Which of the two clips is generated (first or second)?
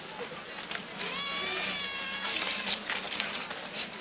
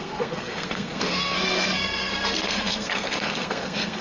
second